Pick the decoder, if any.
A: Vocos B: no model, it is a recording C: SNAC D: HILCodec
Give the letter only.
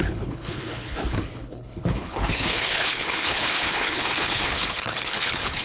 D